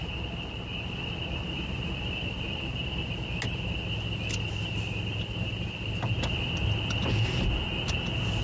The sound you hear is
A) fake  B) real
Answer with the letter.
B